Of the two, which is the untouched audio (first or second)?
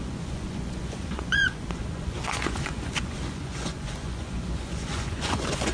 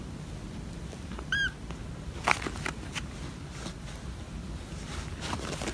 second